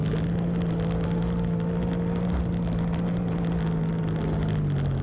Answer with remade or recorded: recorded